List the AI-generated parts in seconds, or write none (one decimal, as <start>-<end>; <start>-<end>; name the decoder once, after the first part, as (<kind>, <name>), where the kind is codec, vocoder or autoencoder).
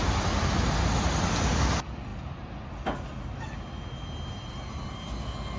none